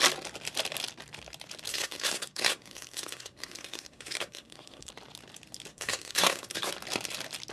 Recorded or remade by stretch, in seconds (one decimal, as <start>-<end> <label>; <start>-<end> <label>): 0.0-1.7 recorded; 1.7-4.9 remade; 4.9-5.7 recorded; 5.7-6.7 remade; 6.7-7.5 recorded